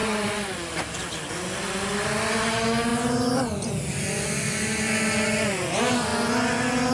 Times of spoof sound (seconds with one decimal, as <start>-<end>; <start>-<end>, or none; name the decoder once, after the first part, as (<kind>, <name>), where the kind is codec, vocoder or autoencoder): 0.0-0.8 (vocoder, Vocos)